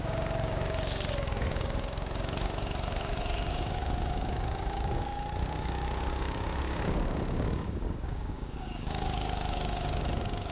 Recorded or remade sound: remade